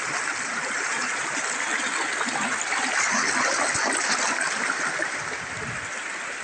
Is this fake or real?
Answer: real